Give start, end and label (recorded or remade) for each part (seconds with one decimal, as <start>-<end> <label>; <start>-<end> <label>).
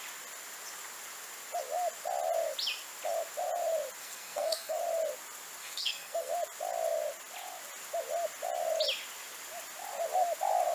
0.0-4.0 recorded; 4.0-4.8 remade; 4.8-5.6 recorded; 5.6-6.3 remade; 6.3-10.7 recorded